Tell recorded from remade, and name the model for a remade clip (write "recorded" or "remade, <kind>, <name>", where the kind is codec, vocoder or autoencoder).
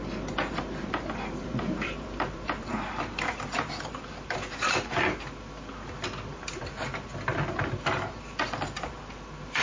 remade, vocoder, BigVGAN v2